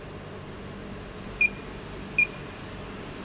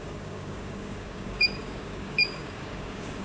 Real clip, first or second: first